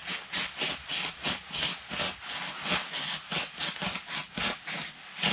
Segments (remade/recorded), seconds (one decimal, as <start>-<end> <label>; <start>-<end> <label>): 0.0-5.3 recorded